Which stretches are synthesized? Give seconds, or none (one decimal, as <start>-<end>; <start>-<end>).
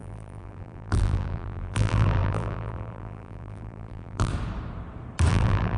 0.0-4.3; 5.3-5.8